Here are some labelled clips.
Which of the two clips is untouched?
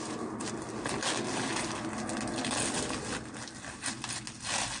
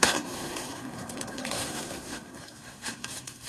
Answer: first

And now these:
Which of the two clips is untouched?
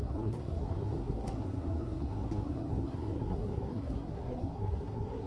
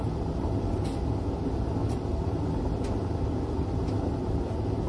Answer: second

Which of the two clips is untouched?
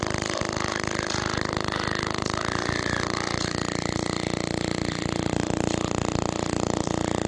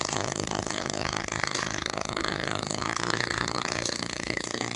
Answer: first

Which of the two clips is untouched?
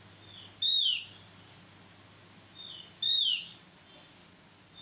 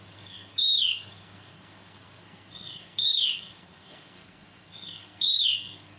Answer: first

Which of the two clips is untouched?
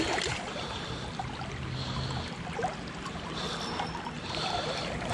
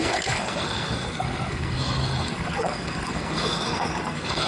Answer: first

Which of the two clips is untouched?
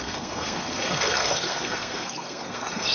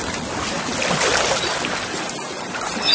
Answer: second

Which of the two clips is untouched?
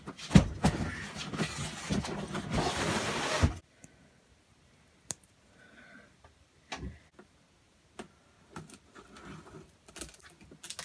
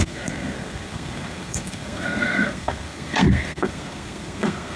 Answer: first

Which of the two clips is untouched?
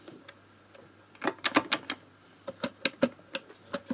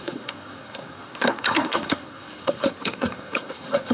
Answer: first